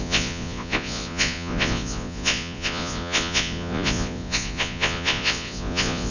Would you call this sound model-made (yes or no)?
yes